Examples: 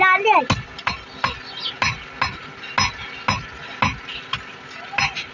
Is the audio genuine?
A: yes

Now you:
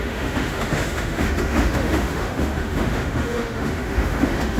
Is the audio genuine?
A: no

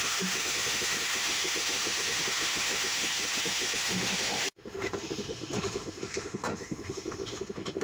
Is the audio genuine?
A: no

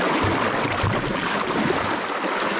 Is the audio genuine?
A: yes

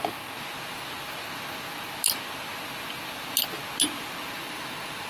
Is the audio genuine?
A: yes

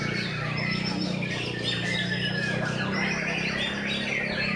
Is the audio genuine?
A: yes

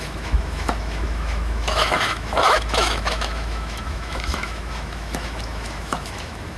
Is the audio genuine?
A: no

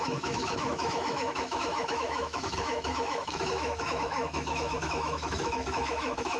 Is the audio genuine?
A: no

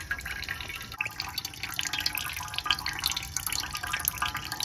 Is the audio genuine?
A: yes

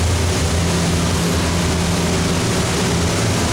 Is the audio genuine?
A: yes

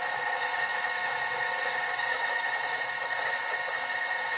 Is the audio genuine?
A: yes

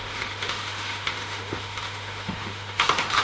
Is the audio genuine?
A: no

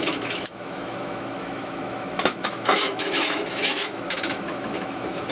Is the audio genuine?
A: no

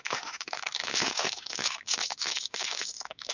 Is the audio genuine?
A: no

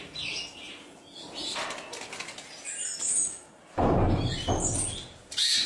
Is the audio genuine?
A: yes